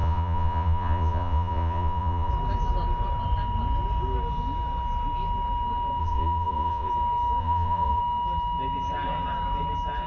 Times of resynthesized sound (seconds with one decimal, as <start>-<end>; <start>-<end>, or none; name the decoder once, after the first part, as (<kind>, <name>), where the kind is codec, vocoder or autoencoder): 0.0-2.3 (vocoder, Vocos); 6.0-6.9; 7.4-8.0